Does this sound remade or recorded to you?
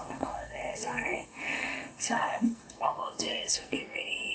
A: remade